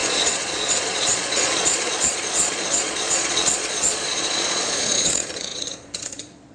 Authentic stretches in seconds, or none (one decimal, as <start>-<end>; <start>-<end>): none